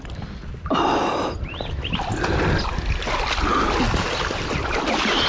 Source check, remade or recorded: recorded